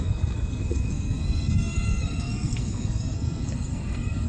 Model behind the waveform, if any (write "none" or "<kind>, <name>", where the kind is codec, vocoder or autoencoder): codec, SNAC